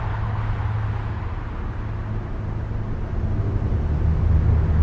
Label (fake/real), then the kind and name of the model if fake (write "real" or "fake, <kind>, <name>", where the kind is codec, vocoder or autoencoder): real